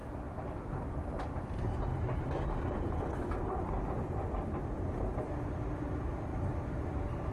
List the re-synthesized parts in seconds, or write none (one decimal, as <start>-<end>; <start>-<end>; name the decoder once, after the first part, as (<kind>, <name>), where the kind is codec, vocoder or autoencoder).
none